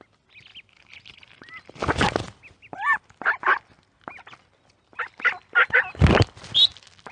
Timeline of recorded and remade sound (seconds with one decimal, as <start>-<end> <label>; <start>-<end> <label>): 0.0-7.1 recorded